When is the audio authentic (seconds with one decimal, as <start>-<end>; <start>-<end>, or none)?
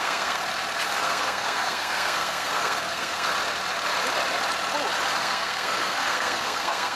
0.4-0.9; 3.3-5.2